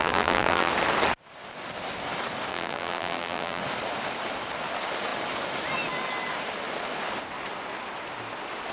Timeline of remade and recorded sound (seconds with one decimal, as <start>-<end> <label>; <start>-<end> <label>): 0.0-0.7 remade; 0.7-2.5 recorded; 2.5-3.6 remade; 3.6-8.7 recorded